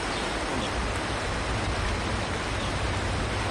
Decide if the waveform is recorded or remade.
recorded